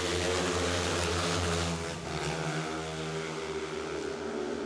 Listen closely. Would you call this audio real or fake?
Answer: real